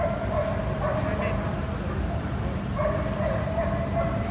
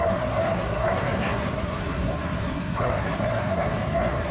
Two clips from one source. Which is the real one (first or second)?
first